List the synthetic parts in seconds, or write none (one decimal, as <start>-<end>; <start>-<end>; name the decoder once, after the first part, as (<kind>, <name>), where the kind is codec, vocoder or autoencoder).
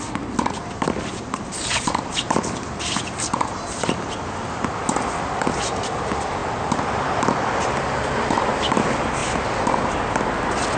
none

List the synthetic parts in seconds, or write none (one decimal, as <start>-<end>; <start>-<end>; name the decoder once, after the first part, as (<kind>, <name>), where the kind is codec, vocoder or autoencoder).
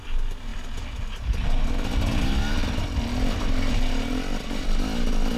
none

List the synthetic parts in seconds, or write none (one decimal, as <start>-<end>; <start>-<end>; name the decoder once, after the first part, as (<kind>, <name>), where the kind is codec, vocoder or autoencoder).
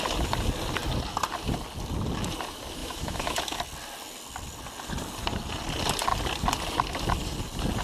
2.8-3.6 (autoencoder, DAC-VAE)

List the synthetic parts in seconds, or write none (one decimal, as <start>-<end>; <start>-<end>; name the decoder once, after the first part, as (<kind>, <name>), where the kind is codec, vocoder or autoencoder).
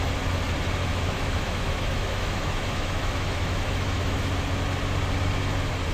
0.9-4.2 (autoencoder, DAC-VAE)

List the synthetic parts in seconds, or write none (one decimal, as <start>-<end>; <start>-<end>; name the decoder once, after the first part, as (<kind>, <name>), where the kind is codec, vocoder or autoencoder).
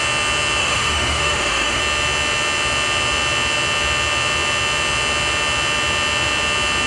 0.6-1.8 (autoencoder, DAC-VAE)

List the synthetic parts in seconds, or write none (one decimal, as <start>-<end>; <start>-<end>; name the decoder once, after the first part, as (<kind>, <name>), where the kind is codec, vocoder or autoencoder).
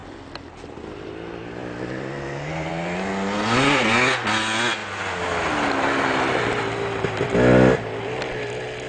none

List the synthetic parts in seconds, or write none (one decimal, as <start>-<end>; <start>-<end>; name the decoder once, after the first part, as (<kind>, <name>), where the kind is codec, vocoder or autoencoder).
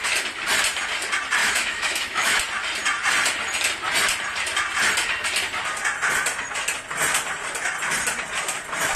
1.4-2.4 (autoencoder, DAC-VAE)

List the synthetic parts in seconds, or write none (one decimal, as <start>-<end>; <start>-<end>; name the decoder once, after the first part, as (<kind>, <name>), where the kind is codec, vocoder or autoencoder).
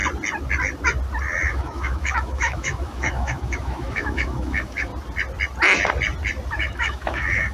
1.5-4.9 (autoencoder, DAC-VAE); 6.5-7.5